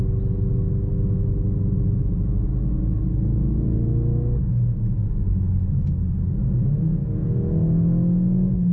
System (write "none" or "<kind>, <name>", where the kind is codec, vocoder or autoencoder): none